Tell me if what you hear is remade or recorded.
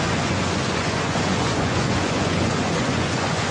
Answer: remade